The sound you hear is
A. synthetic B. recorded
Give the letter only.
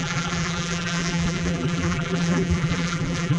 A